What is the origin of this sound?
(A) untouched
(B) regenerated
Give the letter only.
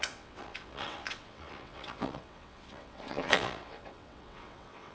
B